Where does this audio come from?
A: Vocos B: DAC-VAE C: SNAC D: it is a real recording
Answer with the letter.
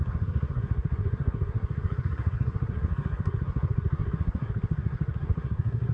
C